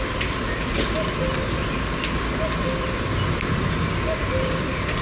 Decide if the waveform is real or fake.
real